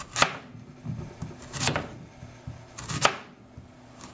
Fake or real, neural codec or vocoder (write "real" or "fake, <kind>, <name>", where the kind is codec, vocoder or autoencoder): real